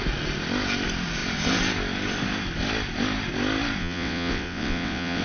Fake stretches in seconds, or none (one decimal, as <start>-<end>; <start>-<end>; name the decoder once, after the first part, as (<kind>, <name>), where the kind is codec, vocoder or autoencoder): 3.8-5.2 (vocoder, WaveNeXt)